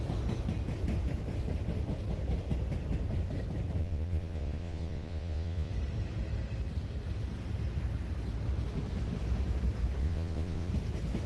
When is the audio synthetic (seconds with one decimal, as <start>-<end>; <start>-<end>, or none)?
3.8-5.7; 10.0-10.7